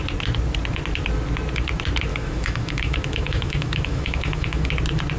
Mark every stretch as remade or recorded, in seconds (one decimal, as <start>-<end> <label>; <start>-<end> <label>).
0.0-2.1 recorded; 2.1-4.7 remade; 4.7-5.2 recorded